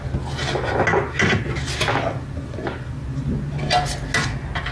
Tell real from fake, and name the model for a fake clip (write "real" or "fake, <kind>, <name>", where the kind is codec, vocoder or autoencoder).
real